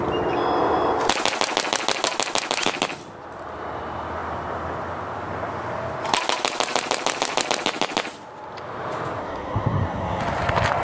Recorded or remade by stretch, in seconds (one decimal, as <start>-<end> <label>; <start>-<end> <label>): 0.0-9.2 recorded; 9.2-10.2 remade; 10.2-10.8 recorded